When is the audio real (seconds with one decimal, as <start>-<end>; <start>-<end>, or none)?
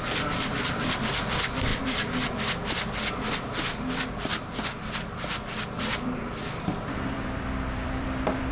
1.7-6.5